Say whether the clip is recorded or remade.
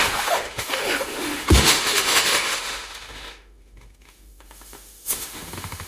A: remade